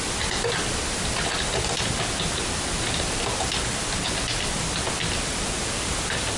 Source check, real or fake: real